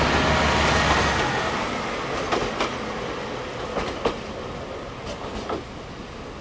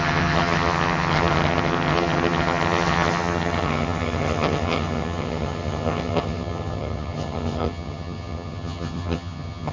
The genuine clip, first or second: first